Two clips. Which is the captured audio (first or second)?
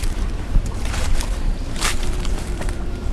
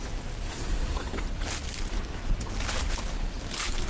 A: second